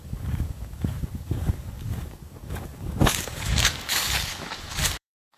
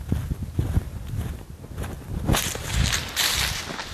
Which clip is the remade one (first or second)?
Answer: first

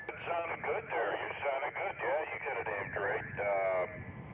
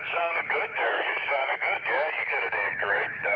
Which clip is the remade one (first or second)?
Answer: second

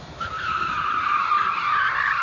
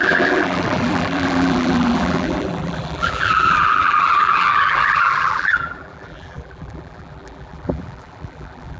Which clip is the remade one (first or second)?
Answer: second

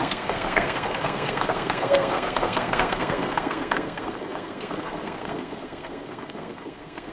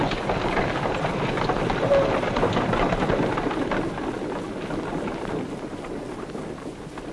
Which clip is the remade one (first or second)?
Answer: first